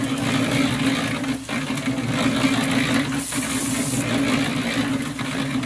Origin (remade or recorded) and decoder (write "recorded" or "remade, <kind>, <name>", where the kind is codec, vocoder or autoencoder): recorded